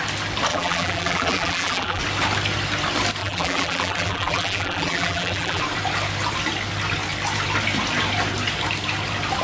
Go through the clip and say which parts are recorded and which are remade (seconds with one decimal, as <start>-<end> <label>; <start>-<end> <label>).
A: 0.0-0.5 recorded; 0.5-2.0 remade; 2.0-3.2 recorded; 3.2-5.6 remade; 5.6-9.4 recorded